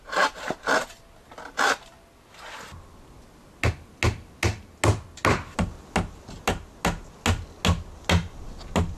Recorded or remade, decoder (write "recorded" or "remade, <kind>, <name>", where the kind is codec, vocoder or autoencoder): recorded